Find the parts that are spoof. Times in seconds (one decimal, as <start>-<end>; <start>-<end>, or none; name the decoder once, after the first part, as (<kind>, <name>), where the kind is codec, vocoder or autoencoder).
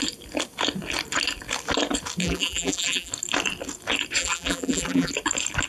2.2-3.1 (vocoder, BigVGAN v2); 4.2-5.1